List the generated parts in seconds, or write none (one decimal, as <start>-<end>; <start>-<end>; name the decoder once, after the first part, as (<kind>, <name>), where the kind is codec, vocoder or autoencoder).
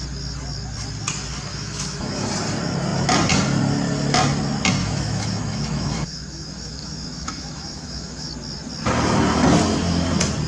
1.5-2.3 (autoencoder, DAC-VAE); 4.8-8.3